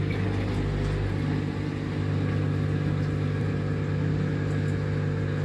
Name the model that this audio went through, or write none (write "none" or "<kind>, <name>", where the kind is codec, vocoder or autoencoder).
none